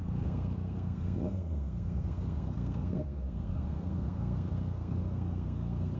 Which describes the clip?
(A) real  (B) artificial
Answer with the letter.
B